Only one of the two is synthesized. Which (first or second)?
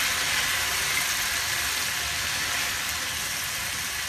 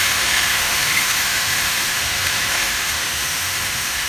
second